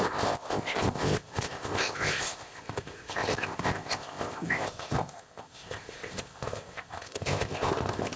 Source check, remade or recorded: remade